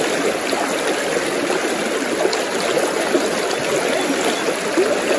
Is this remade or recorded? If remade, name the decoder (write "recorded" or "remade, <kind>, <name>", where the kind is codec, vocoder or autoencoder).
recorded